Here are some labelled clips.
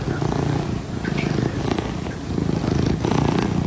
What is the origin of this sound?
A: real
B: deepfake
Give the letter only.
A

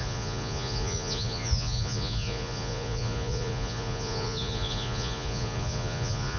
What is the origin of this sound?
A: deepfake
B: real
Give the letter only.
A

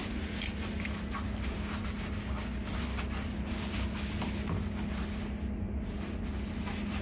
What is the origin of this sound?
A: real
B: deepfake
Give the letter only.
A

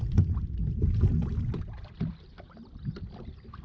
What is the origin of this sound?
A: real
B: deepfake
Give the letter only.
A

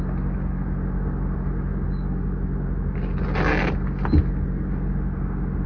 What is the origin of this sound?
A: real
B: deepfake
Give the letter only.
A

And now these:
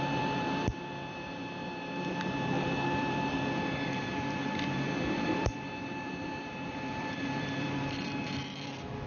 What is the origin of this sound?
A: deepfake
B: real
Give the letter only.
A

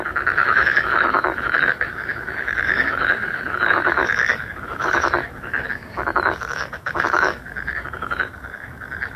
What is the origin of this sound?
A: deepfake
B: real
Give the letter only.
A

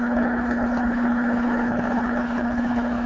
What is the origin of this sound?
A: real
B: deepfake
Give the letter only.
B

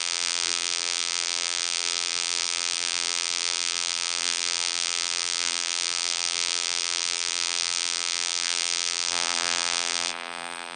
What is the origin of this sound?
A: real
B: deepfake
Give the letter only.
B